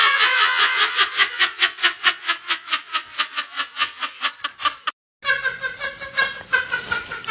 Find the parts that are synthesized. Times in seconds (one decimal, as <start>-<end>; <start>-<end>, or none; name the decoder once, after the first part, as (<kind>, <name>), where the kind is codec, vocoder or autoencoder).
0.0-4.3 (vocoder, Vocos)